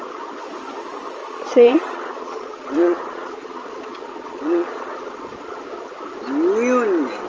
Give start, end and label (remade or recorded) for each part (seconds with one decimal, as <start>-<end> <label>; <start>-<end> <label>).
0.0-1.2 recorded; 1.2-5.6 remade; 5.6-7.3 recorded